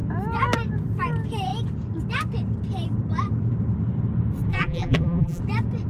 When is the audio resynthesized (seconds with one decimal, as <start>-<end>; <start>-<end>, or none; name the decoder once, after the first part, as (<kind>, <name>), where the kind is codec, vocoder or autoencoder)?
4.5-5.4 (vocoder, BigVGAN v2)